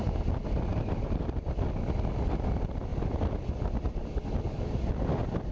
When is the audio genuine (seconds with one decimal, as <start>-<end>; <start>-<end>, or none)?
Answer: 0.0-0.7; 1.6-5.5